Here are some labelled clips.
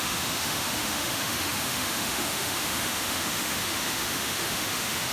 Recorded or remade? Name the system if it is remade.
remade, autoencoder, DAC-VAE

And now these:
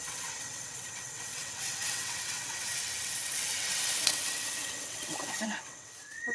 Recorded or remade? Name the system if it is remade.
remade, vocoder, WaveNeXt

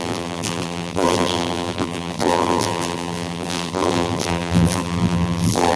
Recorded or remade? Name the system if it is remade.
remade, vocoder, BigVGAN v2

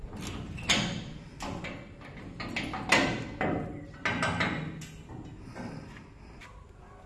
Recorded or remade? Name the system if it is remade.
recorded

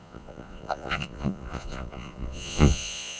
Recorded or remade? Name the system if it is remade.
remade, vocoder, Vocos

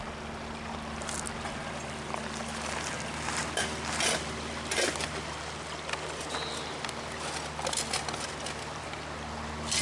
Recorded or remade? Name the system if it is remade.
recorded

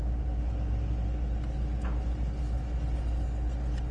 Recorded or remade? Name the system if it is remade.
recorded